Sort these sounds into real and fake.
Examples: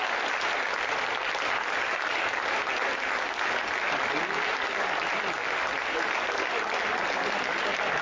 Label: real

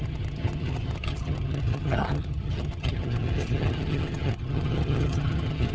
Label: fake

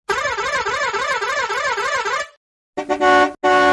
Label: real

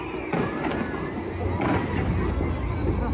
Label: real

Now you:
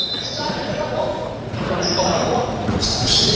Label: fake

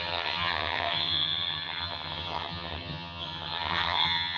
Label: fake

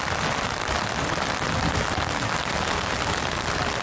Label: real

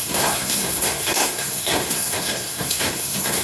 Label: fake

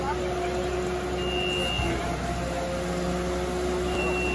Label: real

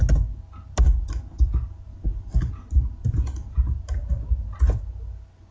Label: real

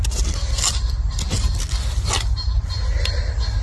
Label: real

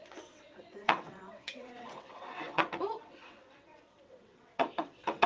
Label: fake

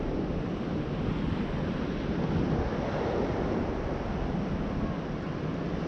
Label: real